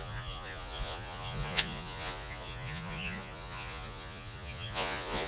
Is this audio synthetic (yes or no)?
yes